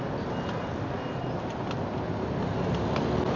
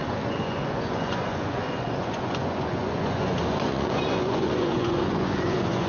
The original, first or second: first